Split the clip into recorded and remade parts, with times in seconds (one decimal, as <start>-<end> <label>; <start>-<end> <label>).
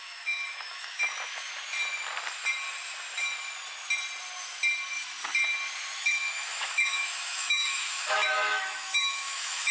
0.0-1.5 remade; 1.5-6.0 recorded; 6.0-9.7 remade